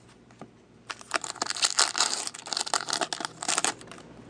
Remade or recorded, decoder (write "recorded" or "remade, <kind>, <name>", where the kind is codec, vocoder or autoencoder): recorded